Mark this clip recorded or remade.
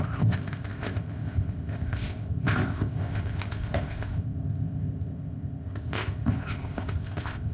remade